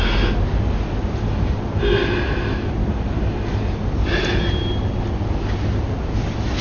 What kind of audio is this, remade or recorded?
recorded